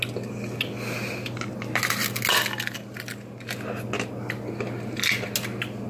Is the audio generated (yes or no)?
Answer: no